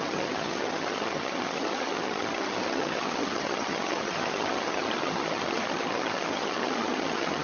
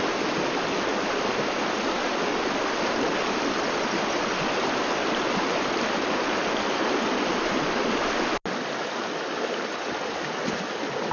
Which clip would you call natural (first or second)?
second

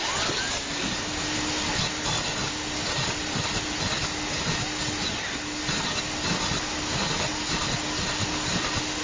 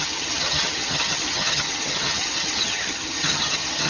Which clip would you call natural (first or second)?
first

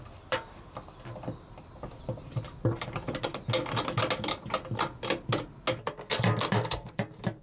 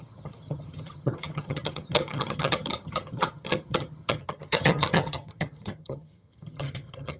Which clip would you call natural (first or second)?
first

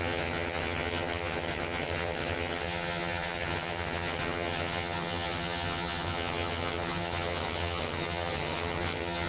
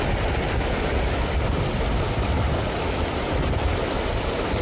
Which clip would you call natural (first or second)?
second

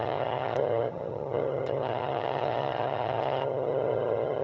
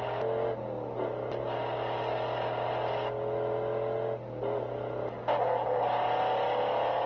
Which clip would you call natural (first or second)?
second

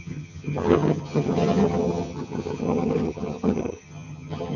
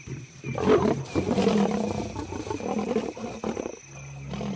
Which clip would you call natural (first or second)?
second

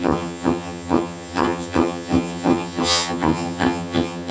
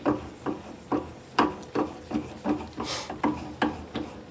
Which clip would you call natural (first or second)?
second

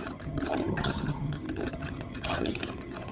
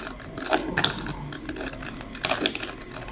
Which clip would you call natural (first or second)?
second